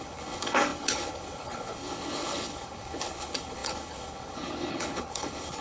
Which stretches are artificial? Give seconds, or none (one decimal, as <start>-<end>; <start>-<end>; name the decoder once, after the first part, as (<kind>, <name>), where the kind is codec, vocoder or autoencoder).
0.0-5.6 (codec, HILCodec)